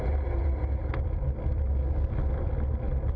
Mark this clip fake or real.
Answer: real